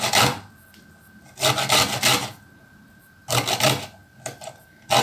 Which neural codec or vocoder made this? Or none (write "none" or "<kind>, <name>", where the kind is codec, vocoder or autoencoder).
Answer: none